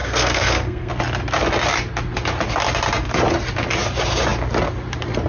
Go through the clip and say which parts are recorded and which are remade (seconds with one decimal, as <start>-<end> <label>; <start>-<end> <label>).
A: 0.0-0.9 remade; 0.9-5.3 recorded